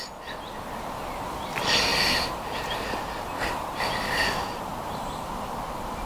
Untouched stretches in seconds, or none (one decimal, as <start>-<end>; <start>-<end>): 0.0-4.7; 5.3-6.1

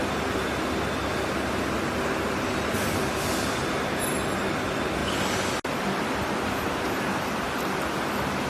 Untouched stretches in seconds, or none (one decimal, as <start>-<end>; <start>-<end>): 0.0-8.5

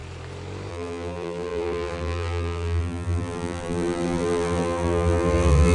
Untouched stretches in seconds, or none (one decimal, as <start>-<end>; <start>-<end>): 0.0-0.7

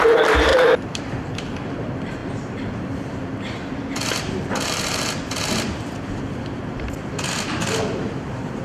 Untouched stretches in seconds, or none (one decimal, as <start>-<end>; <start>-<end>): none

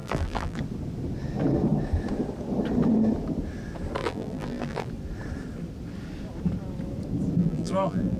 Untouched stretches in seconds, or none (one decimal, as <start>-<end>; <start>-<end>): 0.6-4.0; 4.9-7.4

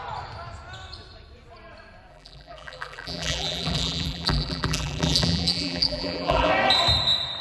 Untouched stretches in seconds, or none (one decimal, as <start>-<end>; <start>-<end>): 0.0-2.1; 6.5-7.4

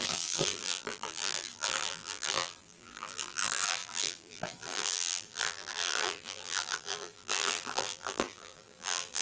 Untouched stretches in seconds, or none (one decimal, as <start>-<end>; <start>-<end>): none